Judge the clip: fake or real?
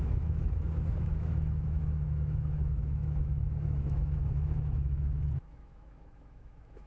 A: fake